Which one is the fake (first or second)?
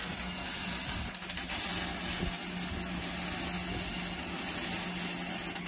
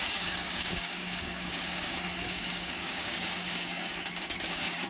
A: second